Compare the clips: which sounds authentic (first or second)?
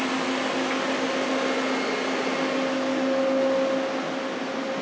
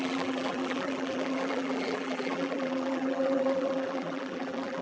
first